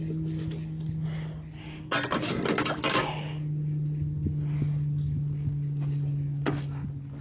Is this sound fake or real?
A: real